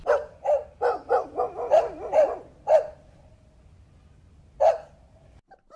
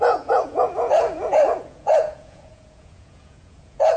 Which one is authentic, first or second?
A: first